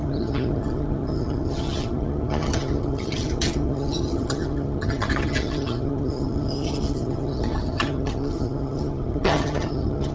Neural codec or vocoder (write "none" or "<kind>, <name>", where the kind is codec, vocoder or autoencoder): vocoder, HiFi-GAN